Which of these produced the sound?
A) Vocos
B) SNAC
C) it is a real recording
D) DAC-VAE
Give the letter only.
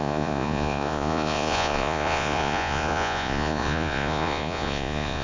A